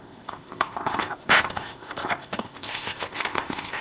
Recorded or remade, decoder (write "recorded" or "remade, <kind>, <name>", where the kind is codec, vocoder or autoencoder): remade, codec, ZipCodec